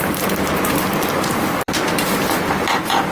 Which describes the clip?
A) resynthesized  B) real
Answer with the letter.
A